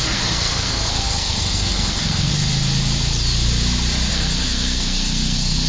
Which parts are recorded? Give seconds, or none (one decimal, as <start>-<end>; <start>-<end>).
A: 2.3-4.1